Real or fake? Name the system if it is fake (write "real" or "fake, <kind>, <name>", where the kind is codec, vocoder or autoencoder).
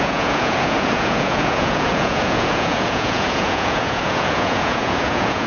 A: fake, vocoder, Vocos